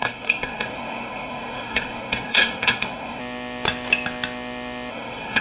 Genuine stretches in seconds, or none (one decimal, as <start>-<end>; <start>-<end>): 3.2-4.9